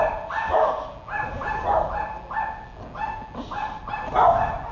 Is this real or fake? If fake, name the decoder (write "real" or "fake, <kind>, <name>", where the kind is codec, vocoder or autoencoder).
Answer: real